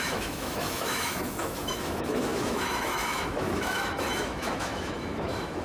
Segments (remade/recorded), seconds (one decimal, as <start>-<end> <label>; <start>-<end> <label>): 0.0-5.6 remade